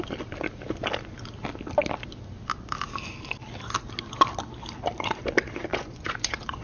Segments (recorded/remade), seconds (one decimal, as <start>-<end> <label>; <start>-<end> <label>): 0.0-5.7 recorded; 5.7-6.6 remade